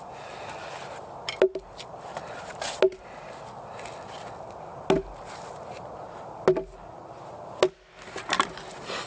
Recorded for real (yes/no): yes